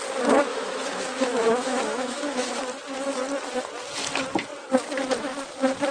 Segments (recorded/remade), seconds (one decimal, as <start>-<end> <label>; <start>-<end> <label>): 0.0-0.5 recorded; 0.5-2.6 remade; 2.6-5.9 recorded

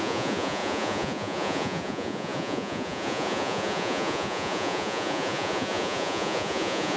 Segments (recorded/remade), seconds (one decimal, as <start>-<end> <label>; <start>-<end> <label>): 0.0-7.0 remade

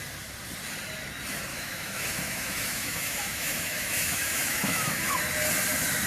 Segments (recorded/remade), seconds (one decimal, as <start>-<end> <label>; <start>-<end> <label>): 0.0-1.5 recorded; 1.5-5.2 remade; 5.2-6.1 recorded

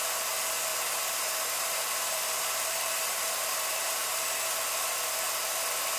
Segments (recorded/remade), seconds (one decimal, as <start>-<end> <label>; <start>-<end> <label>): 0.0-0.7 recorded; 0.7-4.3 remade; 4.3-6.0 recorded

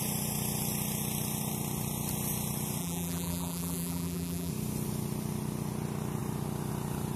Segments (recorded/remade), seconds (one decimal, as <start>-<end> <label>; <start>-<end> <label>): 0.0-2.8 recorded; 2.8-4.5 remade; 4.5-7.2 recorded

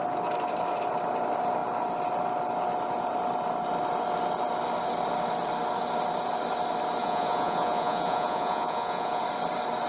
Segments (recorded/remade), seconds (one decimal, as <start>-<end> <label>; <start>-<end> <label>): 0.0-7.0 recorded; 7.0-9.2 remade; 9.2-9.9 recorded

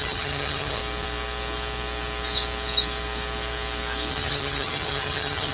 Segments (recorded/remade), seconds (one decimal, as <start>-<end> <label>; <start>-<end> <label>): 0.0-0.8 remade; 0.8-4.1 recorded; 4.1-5.5 remade